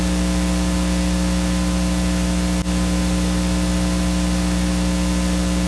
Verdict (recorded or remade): recorded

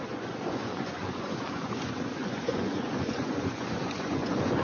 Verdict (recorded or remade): remade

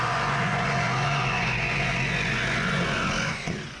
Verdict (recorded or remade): remade